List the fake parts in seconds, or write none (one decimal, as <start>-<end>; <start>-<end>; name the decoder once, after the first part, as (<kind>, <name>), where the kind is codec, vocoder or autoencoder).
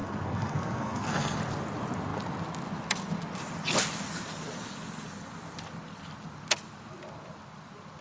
0.0-1.4 (codec, SNAC)